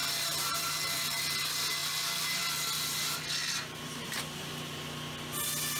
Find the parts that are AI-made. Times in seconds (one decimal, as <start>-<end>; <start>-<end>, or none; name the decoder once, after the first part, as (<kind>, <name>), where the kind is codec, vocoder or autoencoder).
0.0-1.2 (vocoder, BigVGAN v2); 3.4-4.2